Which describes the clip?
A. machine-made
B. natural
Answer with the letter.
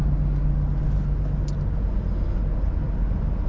B